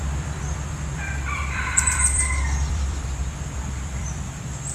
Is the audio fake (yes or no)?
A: yes